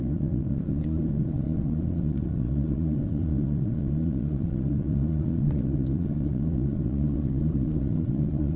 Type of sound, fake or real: fake